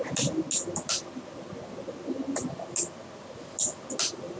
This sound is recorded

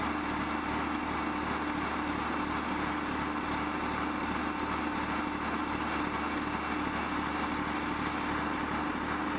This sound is recorded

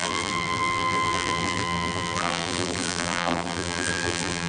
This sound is remade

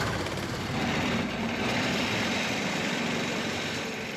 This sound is remade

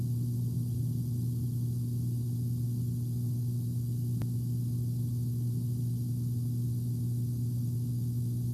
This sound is recorded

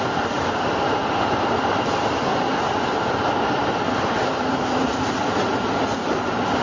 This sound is remade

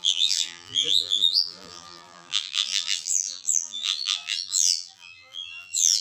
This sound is remade